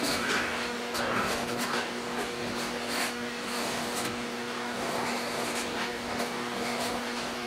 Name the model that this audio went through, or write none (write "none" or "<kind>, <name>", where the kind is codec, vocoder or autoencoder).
codec, DAC